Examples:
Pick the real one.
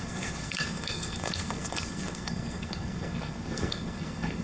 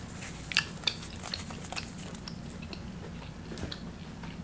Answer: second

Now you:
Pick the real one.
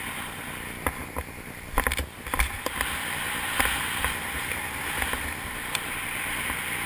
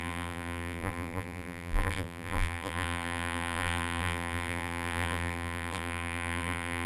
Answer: first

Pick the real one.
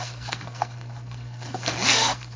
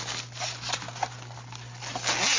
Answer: second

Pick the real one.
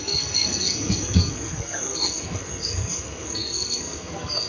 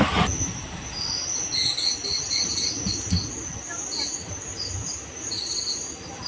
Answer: second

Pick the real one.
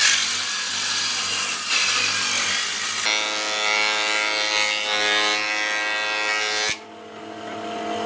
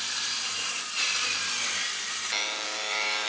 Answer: first